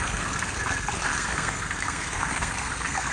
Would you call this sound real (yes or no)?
no